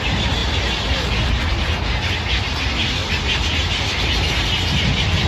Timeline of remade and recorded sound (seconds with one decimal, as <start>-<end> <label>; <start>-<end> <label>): 0.0-3.0 recorded; 3.0-3.7 remade; 3.7-5.3 recorded